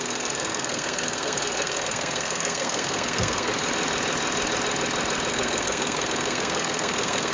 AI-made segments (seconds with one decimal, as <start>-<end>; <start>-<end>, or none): 0.0-3.5; 5.3-7.3